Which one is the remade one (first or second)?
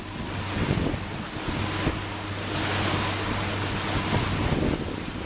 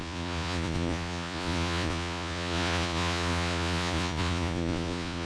second